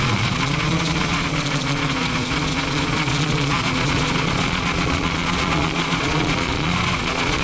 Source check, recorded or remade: remade